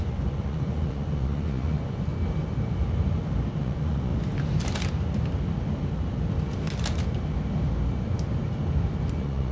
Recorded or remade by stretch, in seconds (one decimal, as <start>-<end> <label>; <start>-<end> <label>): 0.0-2.1 remade; 2.1-3.6 recorded; 3.6-4.1 remade; 4.1-9.1 recorded; 9.1-9.5 remade